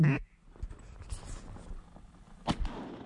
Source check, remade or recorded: recorded